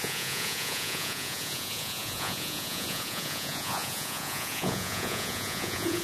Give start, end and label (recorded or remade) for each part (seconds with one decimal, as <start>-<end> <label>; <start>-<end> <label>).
0.0-6.0 remade